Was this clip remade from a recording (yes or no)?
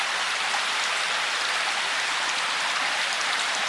no